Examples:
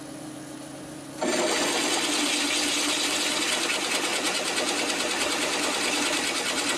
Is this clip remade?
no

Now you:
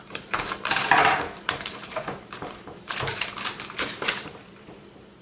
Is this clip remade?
yes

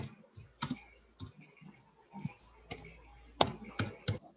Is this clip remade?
no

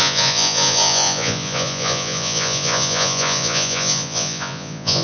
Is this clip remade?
yes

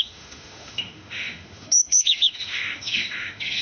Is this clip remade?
yes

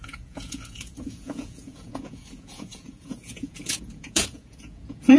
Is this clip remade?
yes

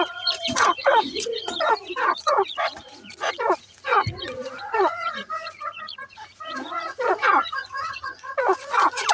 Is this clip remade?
yes